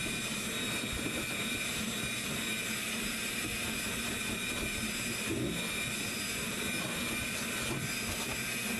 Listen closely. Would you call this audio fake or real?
real